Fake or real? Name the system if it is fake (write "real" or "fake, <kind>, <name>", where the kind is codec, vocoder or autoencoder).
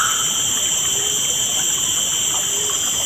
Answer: real